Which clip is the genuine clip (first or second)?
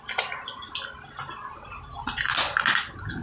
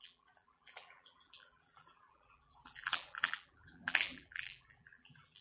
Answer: first